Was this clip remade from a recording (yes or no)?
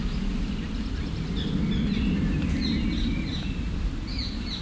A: no